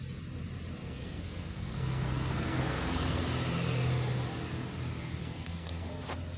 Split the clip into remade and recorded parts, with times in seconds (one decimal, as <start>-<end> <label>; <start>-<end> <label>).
0.0-0.8 recorded; 0.8-3.2 remade; 3.2-5.2 recorded; 5.2-6.0 remade; 6.0-6.4 recorded